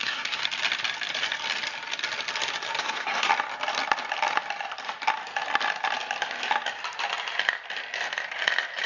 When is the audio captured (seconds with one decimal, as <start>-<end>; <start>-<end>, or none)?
0.4-2.8; 3.3-8.9